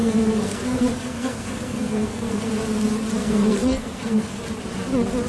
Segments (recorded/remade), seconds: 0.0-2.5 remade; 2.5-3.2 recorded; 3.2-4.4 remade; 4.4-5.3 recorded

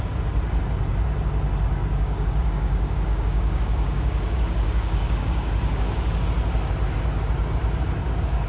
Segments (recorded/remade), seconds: 0.0-1.8 recorded; 1.8-6.3 remade; 6.3-8.0 recorded; 8.0-8.5 remade

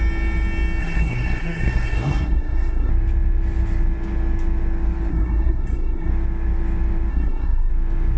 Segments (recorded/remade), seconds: 0.0-0.8 recorded; 0.8-2.9 remade; 2.9-5.1 recorded; 5.1-6.1 remade; 6.1-7.1 recorded; 7.1-7.7 remade; 7.7-8.2 recorded

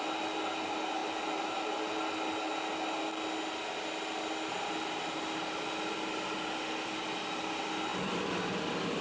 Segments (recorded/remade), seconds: 0.0-9.0 recorded

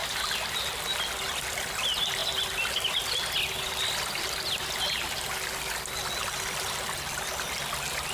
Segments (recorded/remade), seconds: 0.0-8.1 recorded